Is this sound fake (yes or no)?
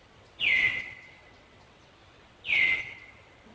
yes